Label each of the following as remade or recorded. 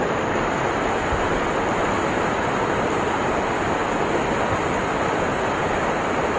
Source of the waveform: remade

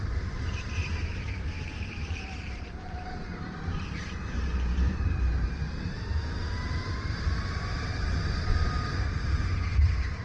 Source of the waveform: remade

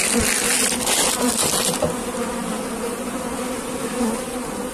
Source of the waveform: recorded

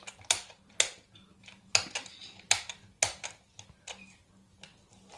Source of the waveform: recorded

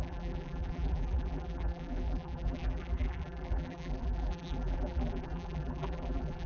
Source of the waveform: remade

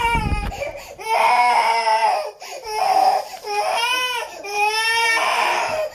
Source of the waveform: remade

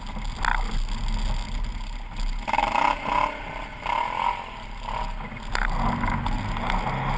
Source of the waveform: recorded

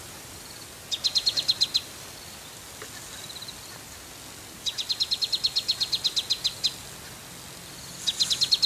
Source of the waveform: recorded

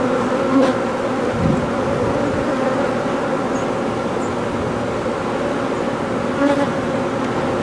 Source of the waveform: recorded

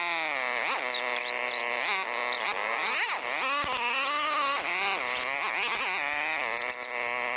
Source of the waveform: recorded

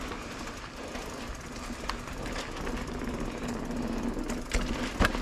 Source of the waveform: recorded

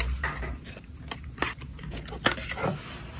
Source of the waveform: recorded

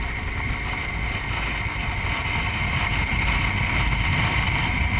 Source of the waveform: recorded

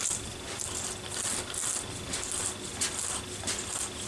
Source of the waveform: recorded